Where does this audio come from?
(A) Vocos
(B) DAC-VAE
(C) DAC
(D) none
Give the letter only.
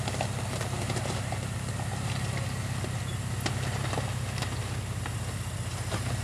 D